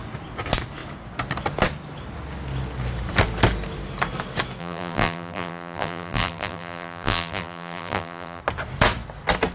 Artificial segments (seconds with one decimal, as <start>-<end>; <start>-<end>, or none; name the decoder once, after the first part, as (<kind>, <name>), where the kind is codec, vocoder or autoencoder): 4.6-8.4 (vocoder, BigVGAN v2)